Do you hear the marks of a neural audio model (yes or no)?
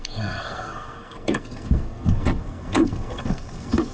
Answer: yes